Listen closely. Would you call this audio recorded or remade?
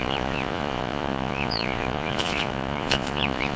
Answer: remade